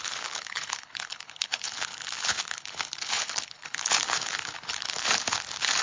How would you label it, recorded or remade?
remade